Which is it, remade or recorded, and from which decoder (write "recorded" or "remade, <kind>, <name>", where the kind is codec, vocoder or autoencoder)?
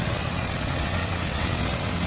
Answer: remade, vocoder, WaveNeXt